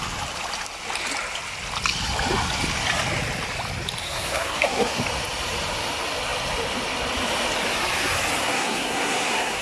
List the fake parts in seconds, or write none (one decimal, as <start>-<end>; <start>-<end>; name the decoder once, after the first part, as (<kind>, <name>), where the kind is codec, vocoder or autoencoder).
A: 4.0-5.0 (codec, SNAC); 8.4-9.6